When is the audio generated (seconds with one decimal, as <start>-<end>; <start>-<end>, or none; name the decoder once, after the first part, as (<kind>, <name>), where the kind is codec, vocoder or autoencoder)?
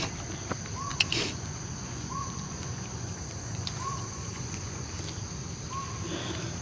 0.9-4.9 (vocoder, Vocos)